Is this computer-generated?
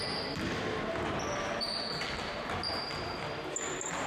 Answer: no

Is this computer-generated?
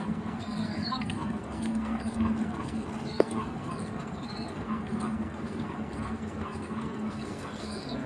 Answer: yes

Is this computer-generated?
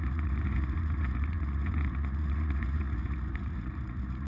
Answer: yes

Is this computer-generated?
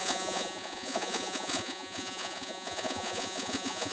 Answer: yes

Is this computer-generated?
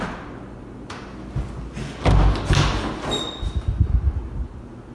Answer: no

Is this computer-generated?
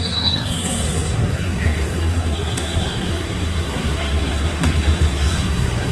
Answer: yes